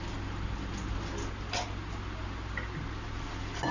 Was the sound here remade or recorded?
recorded